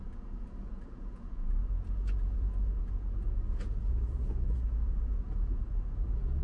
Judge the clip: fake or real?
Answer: fake